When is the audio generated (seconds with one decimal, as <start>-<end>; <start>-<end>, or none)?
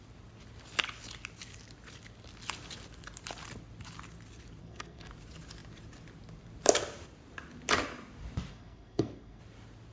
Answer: 4.6-5.1; 8.5-9.4